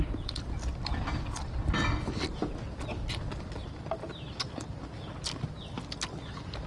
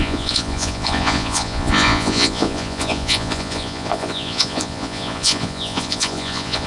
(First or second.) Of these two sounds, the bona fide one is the first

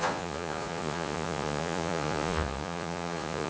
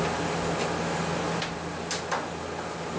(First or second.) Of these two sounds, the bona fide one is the second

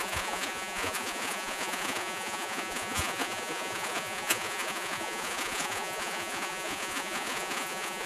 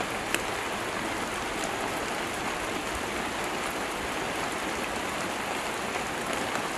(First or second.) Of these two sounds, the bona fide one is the second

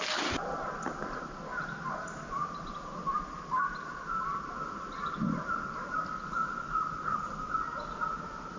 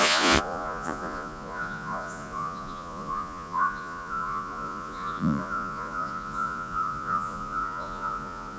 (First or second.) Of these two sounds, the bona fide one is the first